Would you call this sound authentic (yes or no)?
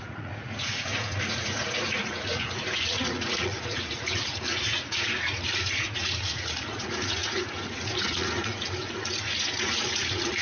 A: no